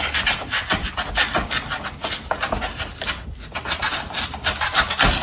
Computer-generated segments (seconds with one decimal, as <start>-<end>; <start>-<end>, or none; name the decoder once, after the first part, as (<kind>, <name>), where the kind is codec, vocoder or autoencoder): none

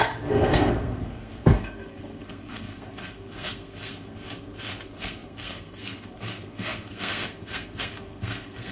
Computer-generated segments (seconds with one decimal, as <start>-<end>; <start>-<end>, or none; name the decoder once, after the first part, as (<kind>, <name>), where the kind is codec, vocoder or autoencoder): 0.0-8.7 (codec, SNAC)

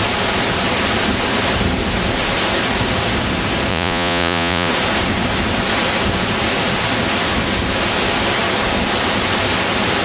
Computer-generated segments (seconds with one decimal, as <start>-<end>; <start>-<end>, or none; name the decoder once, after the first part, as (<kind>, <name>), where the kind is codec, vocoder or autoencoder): 3.7-4.7 (vocoder, Vocos)

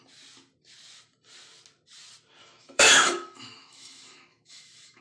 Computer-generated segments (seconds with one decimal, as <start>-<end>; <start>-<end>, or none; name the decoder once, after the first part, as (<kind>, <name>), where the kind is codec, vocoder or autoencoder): 2.4-5.0 (autoencoder, DAC-VAE)

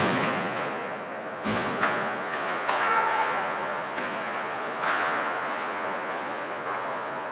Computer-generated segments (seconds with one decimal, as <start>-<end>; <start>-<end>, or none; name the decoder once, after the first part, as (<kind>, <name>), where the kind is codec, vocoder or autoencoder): 0.0-7.3 (vocoder, Vocos)

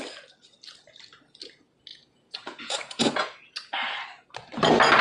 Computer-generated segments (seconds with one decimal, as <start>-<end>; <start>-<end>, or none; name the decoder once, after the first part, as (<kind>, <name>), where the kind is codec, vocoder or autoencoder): 1.9-3.5 (vocoder, Vocos)

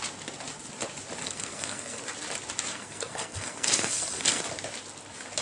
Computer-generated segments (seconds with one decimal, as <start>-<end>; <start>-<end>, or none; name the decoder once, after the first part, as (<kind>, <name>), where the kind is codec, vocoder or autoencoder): 1.2-2.0 (codec, SNAC); 2.7-4.4

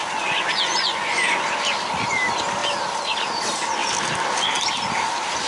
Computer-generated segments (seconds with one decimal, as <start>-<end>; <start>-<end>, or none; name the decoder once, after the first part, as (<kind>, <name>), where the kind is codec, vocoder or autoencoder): 0.0-1.4 (vocoder, Vocos)